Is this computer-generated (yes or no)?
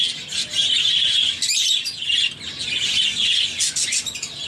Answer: no